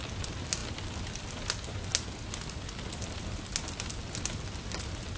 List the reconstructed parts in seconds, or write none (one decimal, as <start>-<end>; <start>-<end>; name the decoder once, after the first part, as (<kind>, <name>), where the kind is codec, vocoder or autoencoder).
none